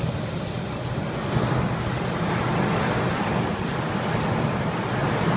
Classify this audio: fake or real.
real